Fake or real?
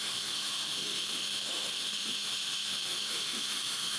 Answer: fake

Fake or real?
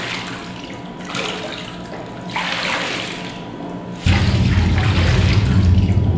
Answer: real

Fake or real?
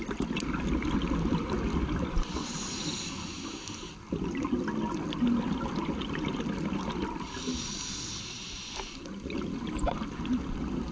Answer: real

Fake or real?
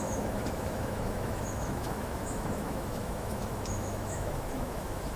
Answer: fake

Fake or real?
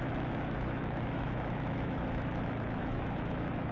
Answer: fake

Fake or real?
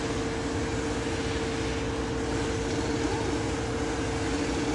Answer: real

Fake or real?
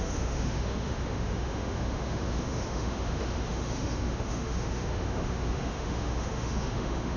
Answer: fake